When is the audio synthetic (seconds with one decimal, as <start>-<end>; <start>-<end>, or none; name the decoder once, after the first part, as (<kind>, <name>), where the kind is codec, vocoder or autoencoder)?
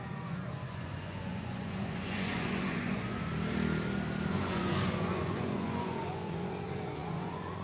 0.0-3.3 (vocoder, Vocos); 4.3-7.6